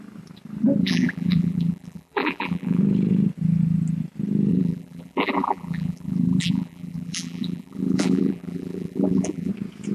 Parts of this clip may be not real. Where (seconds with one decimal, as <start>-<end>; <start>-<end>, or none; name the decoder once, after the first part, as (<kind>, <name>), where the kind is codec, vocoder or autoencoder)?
0.8-2.8 (vocoder, BigVGAN v2); 4.5-9.5